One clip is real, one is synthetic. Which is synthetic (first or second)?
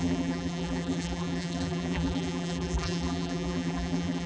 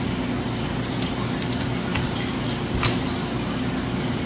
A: first